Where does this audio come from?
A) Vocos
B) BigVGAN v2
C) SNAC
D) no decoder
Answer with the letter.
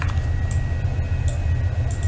D